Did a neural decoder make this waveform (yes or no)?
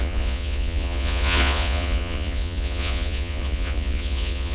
yes